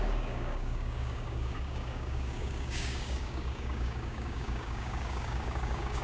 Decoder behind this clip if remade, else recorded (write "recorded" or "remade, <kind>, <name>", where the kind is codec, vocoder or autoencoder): remade, codec, DAC